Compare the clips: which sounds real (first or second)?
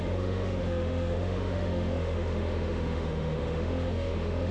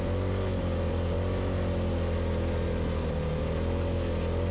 second